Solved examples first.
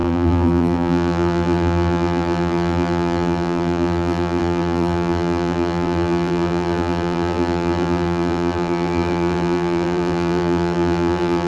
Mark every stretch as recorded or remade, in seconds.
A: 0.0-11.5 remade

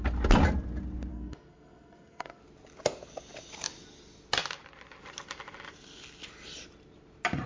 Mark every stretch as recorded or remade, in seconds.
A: 0.0-1.1 recorded; 1.1-2.4 remade; 2.4-7.5 recorded

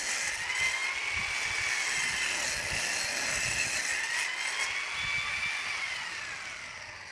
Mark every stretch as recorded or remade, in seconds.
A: 0.0-7.1 recorded

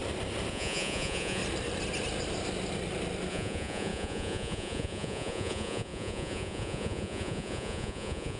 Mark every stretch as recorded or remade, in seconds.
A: 0.0-0.5 recorded; 0.5-1.4 remade; 1.4-3.3 recorded; 3.3-8.4 remade

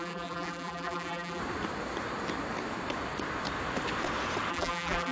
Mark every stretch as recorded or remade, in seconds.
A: 0.0-1.4 remade; 1.4-4.5 recorded; 4.5-5.1 remade

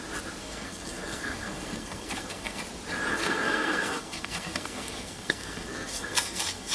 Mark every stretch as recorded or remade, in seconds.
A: 0.0-0.4 recorded; 0.4-2.6 remade; 2.6-3.1 recorded; 3.1-6.7 remade

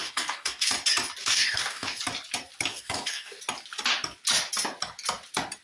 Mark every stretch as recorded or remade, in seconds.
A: 0.0-0.7 remade; 0.7-1.2 recorded; 1.2-2.0 remade; 2.0-2.7 recorded; 2.7-3.4 remade; 3.4-5.6 recorded

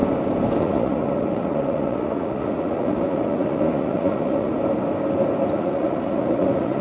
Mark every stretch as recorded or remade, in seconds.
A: 0.0-0.6 recorded; 0.6-4.5 remade; 4.5-5.5 recorded; 5.5-6.8 remade